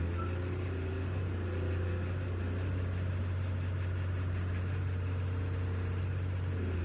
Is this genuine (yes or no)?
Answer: yes